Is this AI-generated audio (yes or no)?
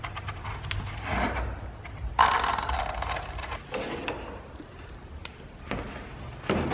no